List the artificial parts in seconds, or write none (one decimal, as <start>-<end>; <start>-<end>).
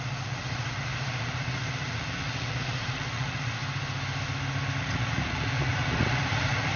0.0-3.6; 4.8-6.8